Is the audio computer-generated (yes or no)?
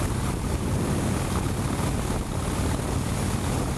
no